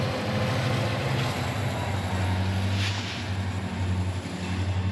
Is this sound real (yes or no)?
yes